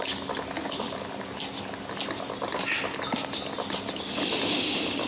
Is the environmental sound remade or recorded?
recorded